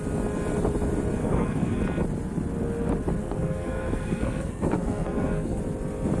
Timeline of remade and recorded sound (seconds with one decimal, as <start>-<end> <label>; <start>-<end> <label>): 0.0-1.2 recorded; 1.2-1.8 remade; 1.8-3.2 recorded; 3.2-5.6 remade; 5.6-6.2 recorded